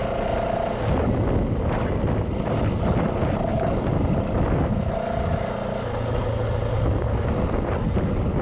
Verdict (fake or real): real